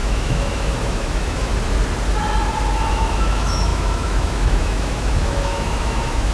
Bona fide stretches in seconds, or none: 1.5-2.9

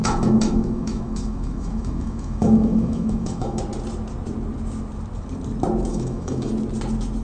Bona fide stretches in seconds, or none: 3.6-5.9; 6.5-7.2

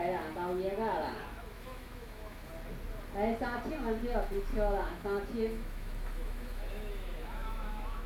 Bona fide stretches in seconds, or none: 0.0-1.3; 2.5-4.5

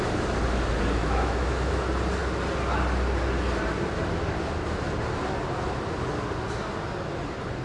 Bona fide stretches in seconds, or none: 0.0-1.0; 1.7-7.6

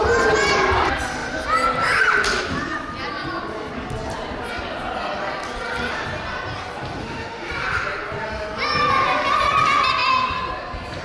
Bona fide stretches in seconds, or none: 0.0-7.0; 7.5-11.0

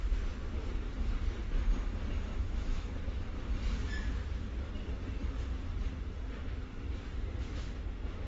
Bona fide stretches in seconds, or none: 0.0-2.3; 3.0-8.3

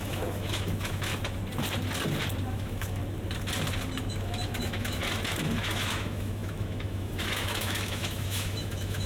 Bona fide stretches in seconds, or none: 1.1-2.5; 3.0-4.0; 5.0-5.6